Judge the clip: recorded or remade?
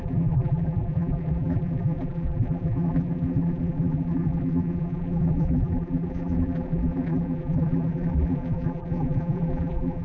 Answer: remade